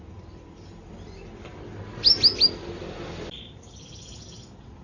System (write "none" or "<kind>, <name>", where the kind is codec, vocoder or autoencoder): none